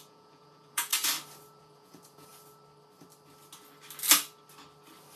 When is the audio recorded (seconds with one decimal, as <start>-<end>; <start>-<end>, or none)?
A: 0.9-1.6; 2.3-5.2